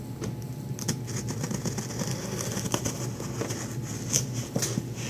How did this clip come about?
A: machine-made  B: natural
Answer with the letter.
B